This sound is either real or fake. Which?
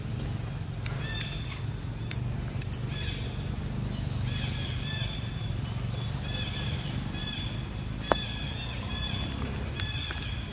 real